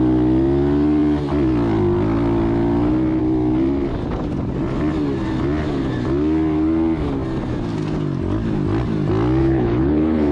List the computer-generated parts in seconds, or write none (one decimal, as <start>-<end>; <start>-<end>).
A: 9.4-10.3

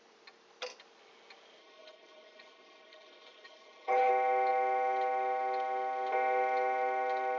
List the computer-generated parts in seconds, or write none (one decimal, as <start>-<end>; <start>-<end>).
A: 1.6-4.1